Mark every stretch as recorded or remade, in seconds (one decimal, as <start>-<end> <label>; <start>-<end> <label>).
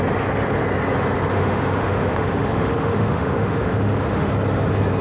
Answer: 0.0-1.3 recorded; 1.3-4.3 remade; 4.3-5.0 recorded